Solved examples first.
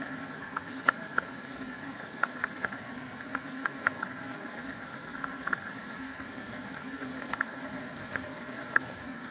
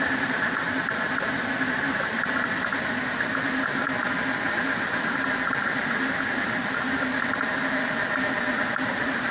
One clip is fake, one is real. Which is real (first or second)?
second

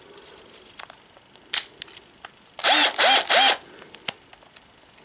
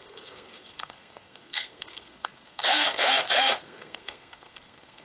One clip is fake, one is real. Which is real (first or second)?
first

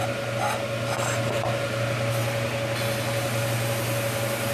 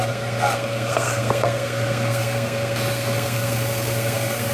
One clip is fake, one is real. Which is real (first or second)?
first